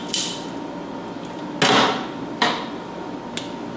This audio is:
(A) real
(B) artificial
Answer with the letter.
A